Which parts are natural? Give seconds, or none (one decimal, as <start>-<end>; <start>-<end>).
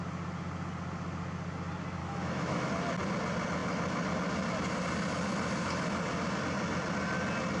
0.0-2.0; 2.7-7.6